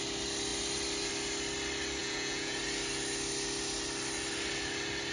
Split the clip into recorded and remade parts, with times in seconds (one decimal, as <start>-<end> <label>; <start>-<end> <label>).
0.0-2.0 recorded; 2.0-2.6 remade; 2.6-5.1 recorded